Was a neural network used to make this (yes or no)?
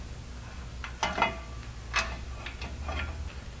no